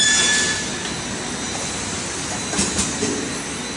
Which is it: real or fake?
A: real